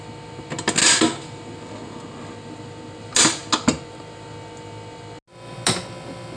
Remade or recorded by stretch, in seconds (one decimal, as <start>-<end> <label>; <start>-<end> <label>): 0.0-6.4 recorded